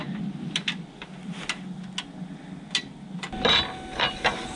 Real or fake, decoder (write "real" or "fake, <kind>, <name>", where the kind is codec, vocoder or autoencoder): real